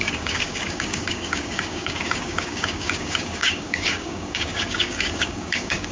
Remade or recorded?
remade